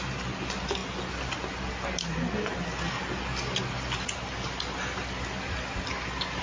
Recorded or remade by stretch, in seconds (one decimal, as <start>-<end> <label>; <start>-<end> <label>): 0.0-6.4 recorded